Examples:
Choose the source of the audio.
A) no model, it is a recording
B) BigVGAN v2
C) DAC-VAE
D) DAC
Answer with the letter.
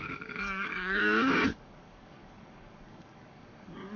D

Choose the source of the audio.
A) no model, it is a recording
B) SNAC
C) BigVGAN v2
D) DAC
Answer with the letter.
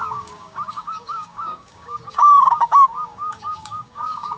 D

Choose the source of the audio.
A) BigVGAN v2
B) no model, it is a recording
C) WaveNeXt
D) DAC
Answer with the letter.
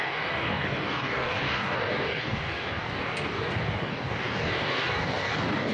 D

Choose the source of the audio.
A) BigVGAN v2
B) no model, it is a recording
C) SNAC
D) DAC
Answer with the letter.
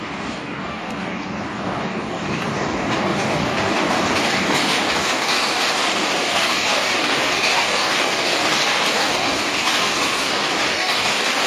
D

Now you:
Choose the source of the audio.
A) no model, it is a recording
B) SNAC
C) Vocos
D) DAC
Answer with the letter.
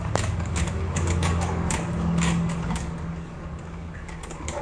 D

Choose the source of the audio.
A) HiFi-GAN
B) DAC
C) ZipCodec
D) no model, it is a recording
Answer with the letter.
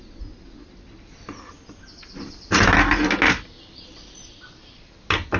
D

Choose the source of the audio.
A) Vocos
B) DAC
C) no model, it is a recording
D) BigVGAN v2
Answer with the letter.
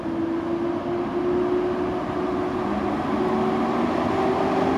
C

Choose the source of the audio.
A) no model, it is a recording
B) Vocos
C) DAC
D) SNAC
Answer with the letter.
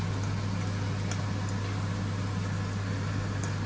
A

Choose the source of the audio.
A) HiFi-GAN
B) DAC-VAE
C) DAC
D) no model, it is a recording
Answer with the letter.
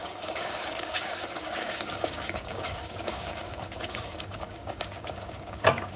C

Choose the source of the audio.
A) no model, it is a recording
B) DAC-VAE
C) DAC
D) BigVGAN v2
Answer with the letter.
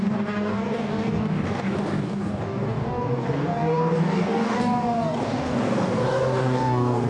C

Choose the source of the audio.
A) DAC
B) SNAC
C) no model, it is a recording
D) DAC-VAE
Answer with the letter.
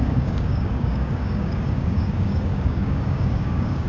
A